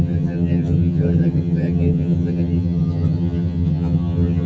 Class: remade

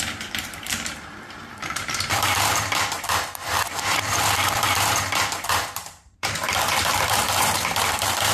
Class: remade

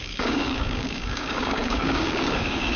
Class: remade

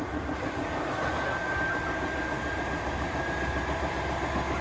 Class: recorded